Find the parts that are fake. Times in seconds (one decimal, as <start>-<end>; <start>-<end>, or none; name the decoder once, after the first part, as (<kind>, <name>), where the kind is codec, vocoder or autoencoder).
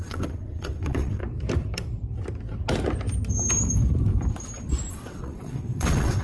0.0-1.2 (vocoder, WaveNeXt); 4.9-6.2